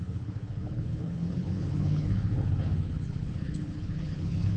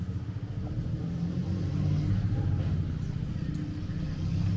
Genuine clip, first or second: second